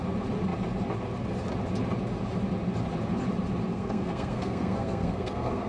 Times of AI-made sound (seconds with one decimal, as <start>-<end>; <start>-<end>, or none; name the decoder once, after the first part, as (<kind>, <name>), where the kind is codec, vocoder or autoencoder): 3.7-5.7 (codec, SNAC)